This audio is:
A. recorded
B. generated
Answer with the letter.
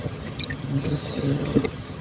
B